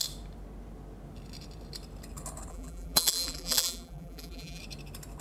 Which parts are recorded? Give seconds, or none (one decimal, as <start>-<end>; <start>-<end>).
0.0-2.5; 4.6-5.2

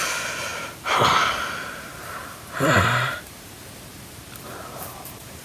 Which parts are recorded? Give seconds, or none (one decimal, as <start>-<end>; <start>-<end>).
0.0-1.9